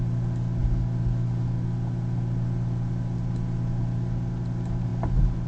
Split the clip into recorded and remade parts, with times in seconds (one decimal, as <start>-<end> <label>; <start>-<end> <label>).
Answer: 0.0-5.5 recorded